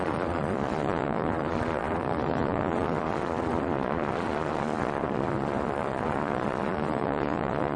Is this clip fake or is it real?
fake